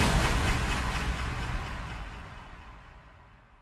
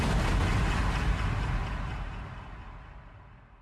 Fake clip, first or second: first